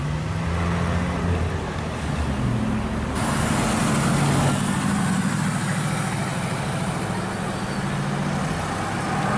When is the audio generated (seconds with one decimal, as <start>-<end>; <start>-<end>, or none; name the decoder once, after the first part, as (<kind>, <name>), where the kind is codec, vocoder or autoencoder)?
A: none